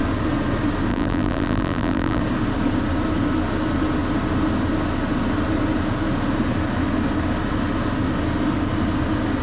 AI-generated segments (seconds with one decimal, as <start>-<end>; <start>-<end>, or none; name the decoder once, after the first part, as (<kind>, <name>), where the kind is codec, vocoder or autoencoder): 0.9-2.2 (vocoder, BigVGAN v2)